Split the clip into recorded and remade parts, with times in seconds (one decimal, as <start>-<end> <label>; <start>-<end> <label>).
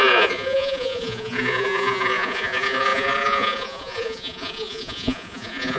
0.0-5.8 remade